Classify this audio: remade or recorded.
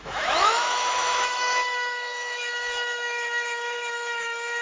remade